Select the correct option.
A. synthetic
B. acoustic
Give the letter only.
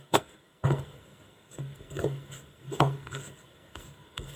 A